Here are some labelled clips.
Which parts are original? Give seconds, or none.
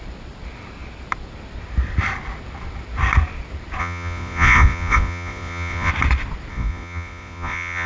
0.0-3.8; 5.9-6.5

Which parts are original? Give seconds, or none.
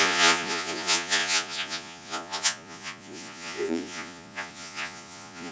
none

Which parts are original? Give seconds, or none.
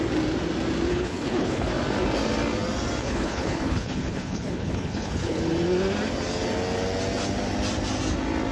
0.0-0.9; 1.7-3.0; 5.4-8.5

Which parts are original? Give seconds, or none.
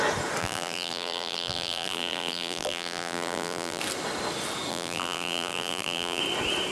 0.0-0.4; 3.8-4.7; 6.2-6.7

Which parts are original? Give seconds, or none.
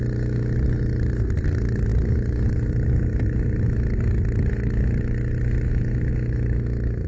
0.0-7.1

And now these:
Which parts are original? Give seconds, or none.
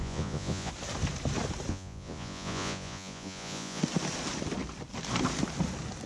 0.7-1.7; 3.8-6.1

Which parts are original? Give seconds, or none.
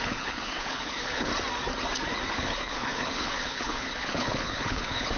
1.3-2.3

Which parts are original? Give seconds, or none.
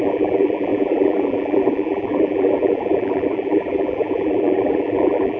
none